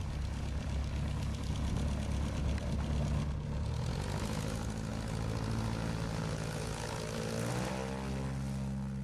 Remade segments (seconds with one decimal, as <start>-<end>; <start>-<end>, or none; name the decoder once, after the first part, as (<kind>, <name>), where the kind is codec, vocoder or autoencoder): 0.8-1.5 (codec, DAC)